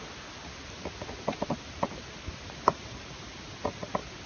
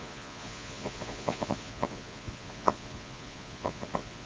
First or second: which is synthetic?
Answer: second